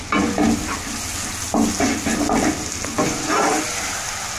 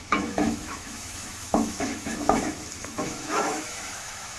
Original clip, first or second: first